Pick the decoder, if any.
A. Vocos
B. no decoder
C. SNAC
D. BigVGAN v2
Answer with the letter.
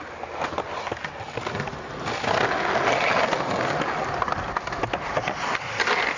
B